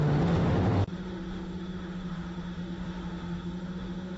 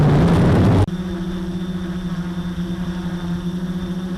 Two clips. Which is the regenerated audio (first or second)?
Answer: first